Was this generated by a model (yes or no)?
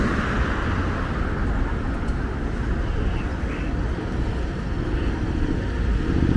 no